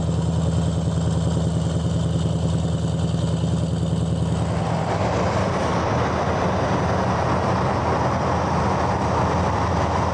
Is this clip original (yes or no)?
yes